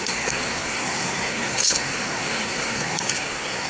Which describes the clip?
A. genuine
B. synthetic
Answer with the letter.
B